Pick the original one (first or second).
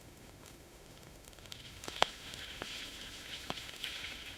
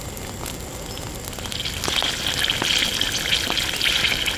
second